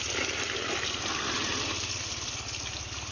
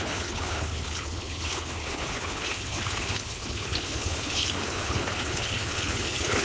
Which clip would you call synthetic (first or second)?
second